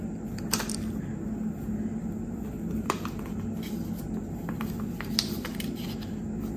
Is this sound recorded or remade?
recorded